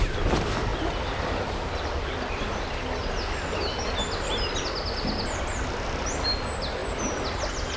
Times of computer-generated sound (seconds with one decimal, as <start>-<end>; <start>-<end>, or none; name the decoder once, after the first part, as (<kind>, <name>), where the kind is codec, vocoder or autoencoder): none